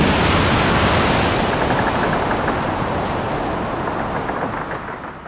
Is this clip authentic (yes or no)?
yes